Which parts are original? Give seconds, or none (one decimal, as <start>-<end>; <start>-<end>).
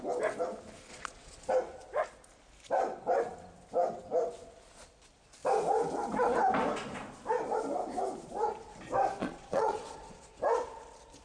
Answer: 0.0-0.9; 1.5-9.2; 10.4-11.2